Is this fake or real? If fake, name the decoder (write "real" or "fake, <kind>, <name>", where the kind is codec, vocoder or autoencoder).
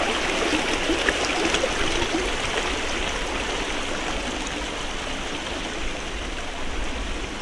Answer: real